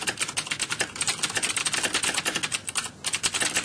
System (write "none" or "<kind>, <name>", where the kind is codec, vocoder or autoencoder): none